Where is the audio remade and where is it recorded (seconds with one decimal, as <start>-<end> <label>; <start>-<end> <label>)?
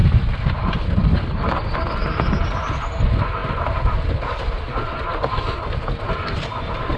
0.0-7.0 recorded